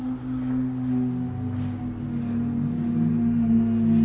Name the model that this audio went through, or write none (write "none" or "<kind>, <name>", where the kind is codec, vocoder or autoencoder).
none